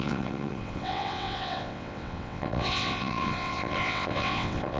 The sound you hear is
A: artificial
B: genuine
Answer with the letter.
A